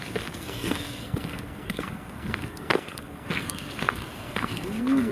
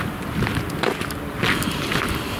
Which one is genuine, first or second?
second